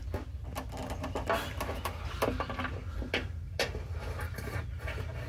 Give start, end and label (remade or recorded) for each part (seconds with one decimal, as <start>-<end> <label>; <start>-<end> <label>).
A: 0.0-5.3 recorded